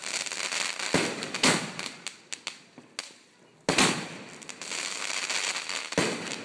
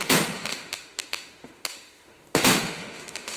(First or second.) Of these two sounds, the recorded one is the first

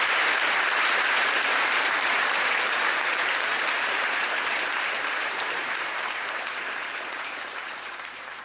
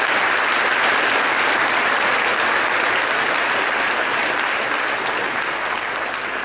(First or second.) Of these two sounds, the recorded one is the second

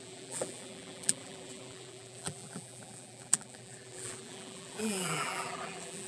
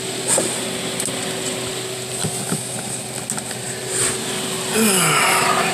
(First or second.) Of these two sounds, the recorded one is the second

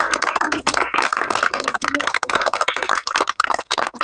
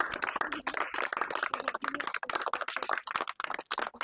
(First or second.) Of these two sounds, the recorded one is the second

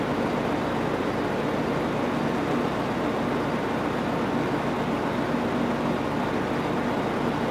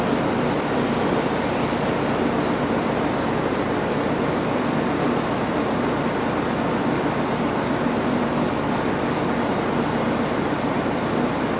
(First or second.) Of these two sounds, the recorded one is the first